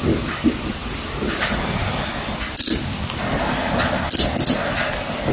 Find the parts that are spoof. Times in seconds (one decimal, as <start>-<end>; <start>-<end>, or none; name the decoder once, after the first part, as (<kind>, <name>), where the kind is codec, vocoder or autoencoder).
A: none